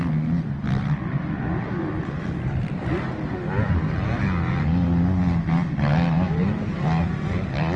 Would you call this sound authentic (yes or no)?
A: yes